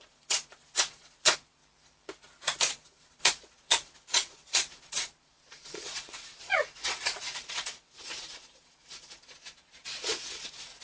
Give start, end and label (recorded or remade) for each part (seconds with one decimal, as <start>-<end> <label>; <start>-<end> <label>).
0.0-1.6 remade; 1.6-2.7 recorded; 2.7-10.8 remade